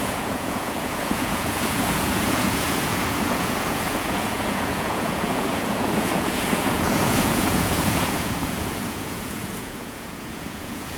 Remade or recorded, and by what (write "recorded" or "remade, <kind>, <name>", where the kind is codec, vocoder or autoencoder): remade, vocoder, Vocos